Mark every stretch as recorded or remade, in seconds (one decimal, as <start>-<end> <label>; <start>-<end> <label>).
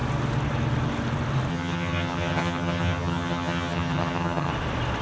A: 0.0-1.5 recorded; 1.5-4.5 remade; 4.5-5.0 recorded